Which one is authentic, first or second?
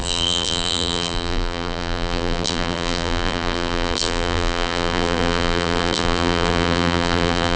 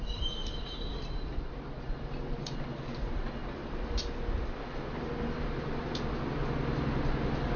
second